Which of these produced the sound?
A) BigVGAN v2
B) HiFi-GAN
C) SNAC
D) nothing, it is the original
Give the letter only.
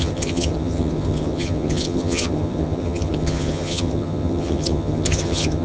B